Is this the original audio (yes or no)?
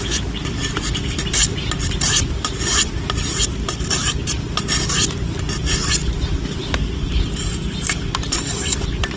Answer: yes